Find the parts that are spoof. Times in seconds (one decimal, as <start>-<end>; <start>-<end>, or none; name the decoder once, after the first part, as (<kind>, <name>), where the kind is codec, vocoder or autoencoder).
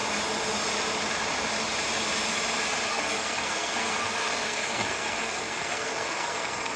2.9-6.8 (codec, SNAC)